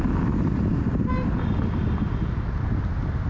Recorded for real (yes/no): yes